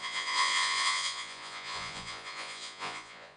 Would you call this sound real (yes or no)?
no